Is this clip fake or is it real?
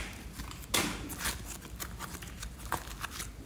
real